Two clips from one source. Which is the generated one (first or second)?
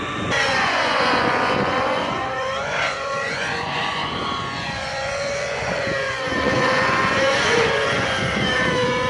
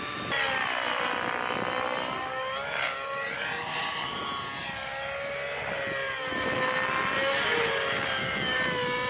first